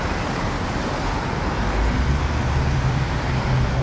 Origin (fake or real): real